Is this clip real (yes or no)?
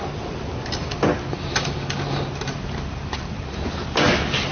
yes